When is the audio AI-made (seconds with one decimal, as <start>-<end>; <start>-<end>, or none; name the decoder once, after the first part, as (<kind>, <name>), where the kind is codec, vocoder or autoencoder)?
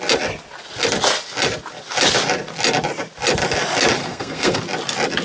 4.0-4.6 (codec, SNAC)